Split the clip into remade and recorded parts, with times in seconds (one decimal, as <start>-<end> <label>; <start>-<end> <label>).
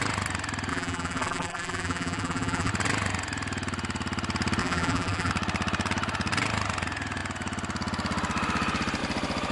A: 0.0-0.7 recorded; 0.7-2.7 remade; 2.7-4.6 recorded; 4.6-5.3 remade; 5.3-9.5 recorded